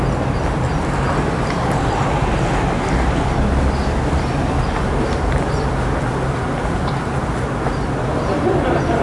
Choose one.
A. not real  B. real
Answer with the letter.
B